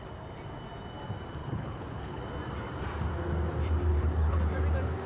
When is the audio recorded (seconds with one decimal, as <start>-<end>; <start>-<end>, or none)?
0.0-1.4; 2.2-3.9; 4.4-5.1